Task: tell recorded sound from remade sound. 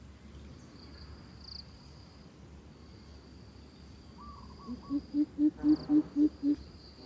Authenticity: recorded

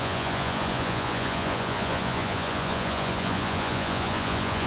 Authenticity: remade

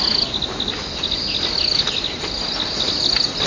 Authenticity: recorded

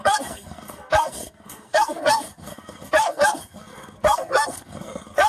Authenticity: remade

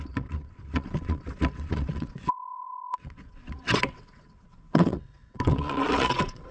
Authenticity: remade